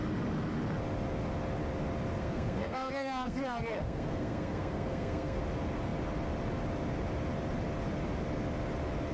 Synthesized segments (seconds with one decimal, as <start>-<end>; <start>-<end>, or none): 2.2-5.4